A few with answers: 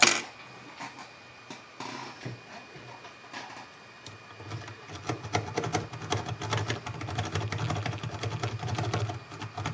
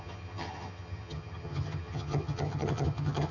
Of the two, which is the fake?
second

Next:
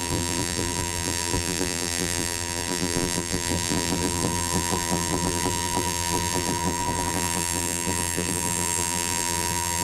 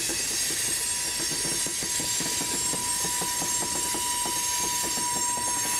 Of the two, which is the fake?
first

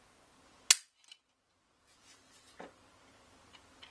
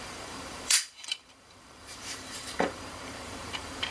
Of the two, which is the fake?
second